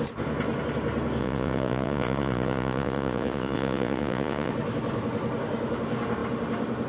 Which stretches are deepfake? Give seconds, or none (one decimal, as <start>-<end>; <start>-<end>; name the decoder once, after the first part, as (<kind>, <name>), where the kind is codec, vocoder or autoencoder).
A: 1.2-4.5 (vocoder, Vocos)